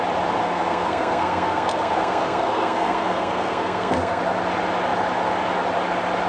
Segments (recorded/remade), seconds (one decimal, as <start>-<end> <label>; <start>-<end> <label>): 0.0-0.4 recorded; 0.4-4.2 remade; 4.2-6.3 recorded